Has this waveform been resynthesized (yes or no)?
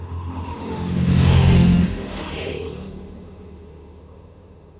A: yes